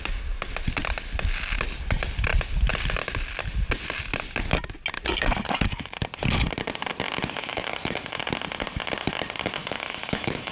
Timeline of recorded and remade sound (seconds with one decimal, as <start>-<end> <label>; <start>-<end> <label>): 0.0-7.4 recorded; 7.4-8.2 remade; 8.2-9.6 recorded; 9.6-10.5 remade